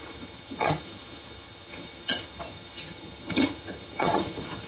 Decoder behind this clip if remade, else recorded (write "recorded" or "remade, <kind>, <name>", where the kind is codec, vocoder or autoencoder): remade, vocoder, HiFi-GAN